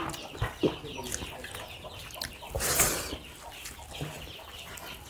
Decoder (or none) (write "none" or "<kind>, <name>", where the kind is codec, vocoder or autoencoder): none